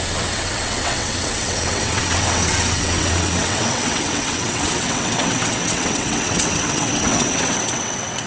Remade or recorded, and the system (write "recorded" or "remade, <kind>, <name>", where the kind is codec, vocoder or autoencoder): remade, vocoder, WaveNeXt